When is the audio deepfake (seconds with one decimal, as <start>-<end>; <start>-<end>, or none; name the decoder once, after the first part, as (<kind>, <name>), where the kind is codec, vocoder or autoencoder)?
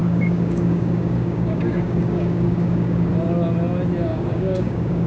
0.0-3.1 (codec, DAC); 4.1-5.1